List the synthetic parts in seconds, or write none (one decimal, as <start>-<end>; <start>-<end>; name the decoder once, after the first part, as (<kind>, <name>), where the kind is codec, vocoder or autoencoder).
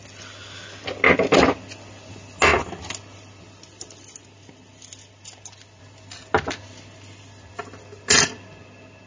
none